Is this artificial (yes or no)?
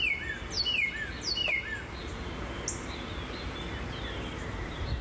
no